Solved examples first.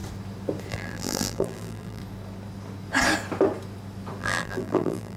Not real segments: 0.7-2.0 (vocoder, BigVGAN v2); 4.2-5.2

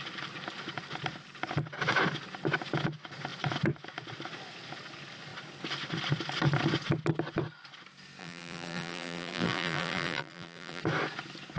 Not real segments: 8.2-10.8 (vocoder, BigVGAN v2)

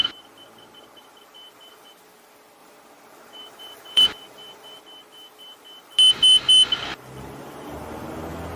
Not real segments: 2.6-4.8 (vocoder, BigVGAN v2)